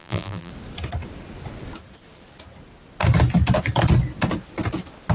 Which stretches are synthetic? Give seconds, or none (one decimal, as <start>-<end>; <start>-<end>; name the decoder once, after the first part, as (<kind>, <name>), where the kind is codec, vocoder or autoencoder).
0.0-0.5 (vocoder, BigVGAN v2)